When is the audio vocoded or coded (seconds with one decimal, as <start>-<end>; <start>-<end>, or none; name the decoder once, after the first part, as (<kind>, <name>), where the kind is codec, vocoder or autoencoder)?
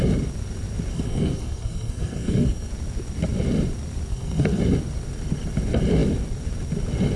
0.9-2.7 (codec, SNAC); 4.1-4.6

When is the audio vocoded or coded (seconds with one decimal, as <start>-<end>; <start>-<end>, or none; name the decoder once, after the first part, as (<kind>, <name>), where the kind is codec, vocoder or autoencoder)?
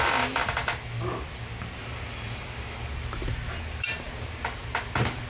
none